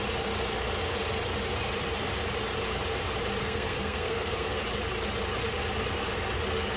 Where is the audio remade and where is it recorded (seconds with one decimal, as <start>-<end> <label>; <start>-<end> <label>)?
0.0-3.4 recorded; 3.4-4.6 remade; 4.6-6.8 recorded

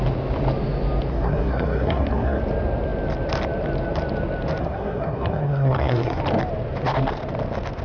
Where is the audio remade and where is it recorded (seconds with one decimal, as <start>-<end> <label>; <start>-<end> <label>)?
0.0-1.1 recorded; 1.1-2.4 remade; 2.4-4.6 recorded; 4.6-6.2 remade; 6.2-7.8 recorded

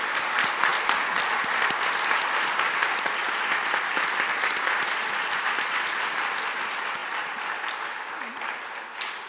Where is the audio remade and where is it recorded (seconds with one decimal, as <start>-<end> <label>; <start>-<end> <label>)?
0.0-0.7 recorded; 0.7-1.4 remade; 1.4-7.0 recorded; 7.0-8.1 remade; 8.1-9.3 recorded

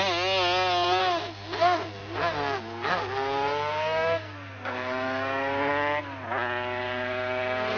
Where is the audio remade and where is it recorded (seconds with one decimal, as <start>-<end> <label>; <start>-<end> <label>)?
0.0-1.0 recorded; 1.0-5.7 remade; 5.7-7.8 recorded

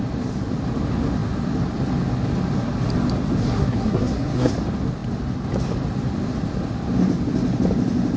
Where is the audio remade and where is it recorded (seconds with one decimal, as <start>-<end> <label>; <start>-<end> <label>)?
0.0-3.4 recorded; 3.4-4.5 remade; 4.5-8.2 recorded